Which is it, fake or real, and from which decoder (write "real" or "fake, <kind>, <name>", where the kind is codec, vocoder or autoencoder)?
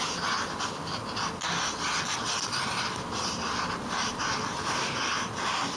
real